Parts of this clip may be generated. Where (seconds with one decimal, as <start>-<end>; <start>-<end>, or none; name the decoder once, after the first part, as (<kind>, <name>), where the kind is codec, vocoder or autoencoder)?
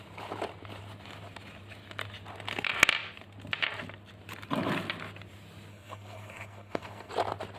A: 5.7-7.1 (codec, SNAC)